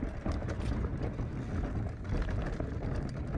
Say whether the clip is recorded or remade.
recorded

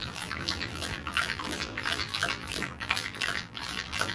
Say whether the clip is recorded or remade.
remade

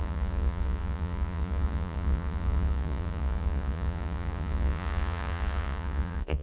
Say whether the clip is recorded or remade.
remade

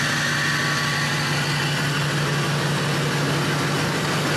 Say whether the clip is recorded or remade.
recorded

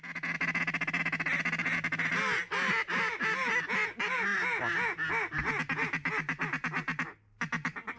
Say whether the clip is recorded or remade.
recorded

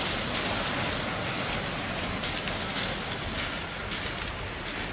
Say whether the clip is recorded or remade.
recorded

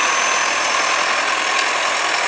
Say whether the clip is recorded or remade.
recorded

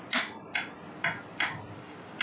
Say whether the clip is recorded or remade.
remade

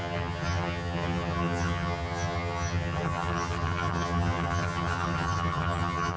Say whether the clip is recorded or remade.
remade